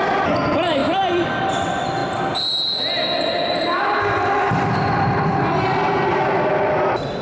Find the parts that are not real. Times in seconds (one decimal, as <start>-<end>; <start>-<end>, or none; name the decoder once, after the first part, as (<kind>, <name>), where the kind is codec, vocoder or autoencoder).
none